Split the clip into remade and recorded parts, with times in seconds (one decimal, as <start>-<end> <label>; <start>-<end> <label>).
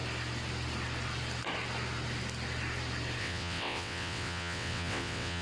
0.0-3.2 recorded; 3.2-5.4 remade